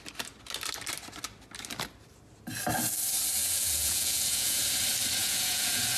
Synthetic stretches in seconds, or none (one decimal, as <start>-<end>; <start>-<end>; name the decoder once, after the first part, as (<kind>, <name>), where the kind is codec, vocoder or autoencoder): 3.4-4.6 (vocoder, Vocos); 5.2-6.0